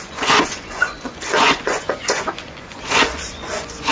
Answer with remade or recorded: remade